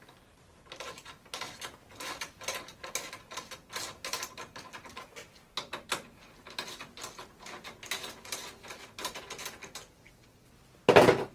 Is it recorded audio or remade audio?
recorded